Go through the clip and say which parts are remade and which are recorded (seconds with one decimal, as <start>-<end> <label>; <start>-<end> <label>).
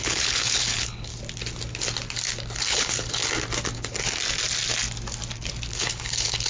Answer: 0.0-1.1 remade; 1.1-2.6 recorded; 2.6-3.2 remade; 3.2-5.7 recorded; 5.7-6.5 remade